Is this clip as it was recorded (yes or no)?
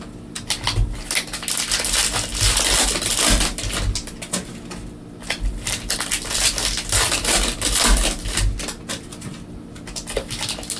yes